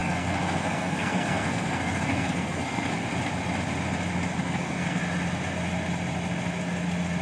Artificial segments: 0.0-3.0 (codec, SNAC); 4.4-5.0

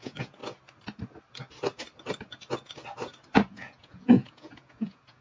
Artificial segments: 0.0-0.4 (vocoder, Vocos); 3.5-5.2

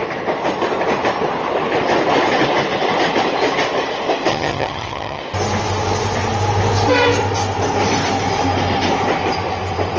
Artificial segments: 4.3-5.2 (vocoder, HiFi-GAN)

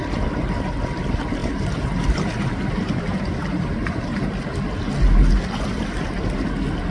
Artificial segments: 1.4-4.3 (vocoder, BigVGAN v2)